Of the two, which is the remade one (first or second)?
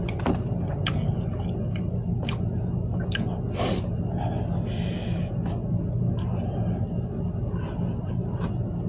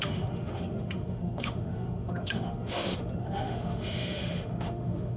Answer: second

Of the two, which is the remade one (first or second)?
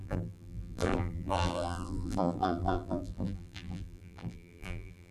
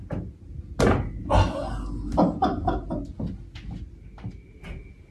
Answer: first